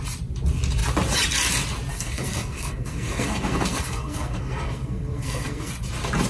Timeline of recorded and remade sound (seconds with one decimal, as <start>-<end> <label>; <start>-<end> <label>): 0.0-1.9 recorded; 1.9-5.7 remade; 5.7-6.3 recorded